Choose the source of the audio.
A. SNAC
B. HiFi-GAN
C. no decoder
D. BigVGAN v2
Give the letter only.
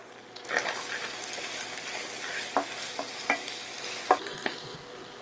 C